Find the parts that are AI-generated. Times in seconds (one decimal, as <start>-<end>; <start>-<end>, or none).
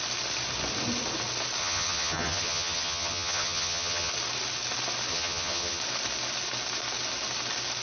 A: 1.6-4.1; 5.1-5.8